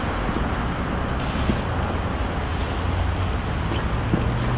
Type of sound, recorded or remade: recorded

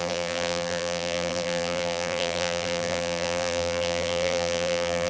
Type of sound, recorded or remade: remade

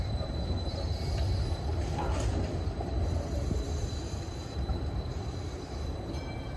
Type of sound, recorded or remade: recorded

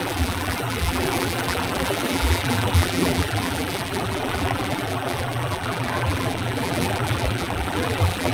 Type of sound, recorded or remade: remade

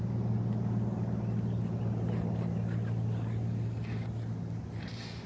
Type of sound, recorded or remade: recorded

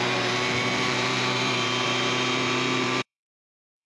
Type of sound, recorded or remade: remade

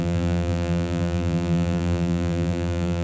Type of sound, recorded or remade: remade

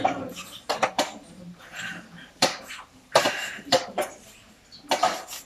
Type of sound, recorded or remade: remade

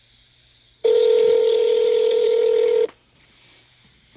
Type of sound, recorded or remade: remade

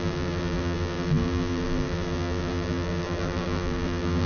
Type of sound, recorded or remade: remade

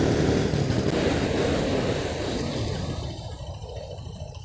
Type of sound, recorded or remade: recorded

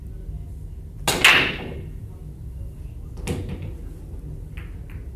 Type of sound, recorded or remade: recorded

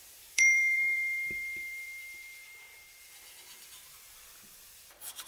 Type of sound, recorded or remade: remade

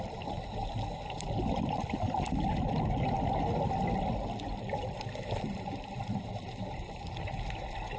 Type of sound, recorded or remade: remade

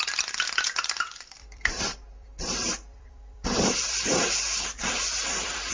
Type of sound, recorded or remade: remade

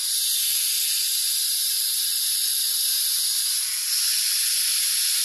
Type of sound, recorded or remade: recorded